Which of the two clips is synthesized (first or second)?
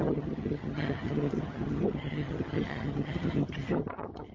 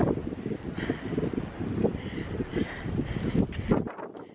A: first